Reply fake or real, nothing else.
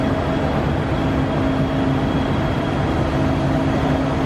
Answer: real